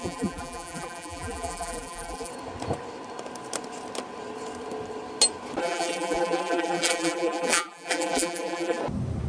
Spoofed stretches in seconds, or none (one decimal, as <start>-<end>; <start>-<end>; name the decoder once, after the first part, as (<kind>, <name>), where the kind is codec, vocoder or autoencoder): 0.0-2.3 (vocoder, BigVGAN v2); 5.6-8.8